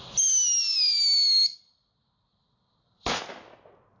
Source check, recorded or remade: recorded